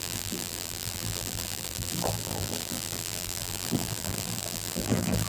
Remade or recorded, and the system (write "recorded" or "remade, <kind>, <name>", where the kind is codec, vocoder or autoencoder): remade, vocoder, BigVGAN v2